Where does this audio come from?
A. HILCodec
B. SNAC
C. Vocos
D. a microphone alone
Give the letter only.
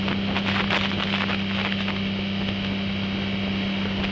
D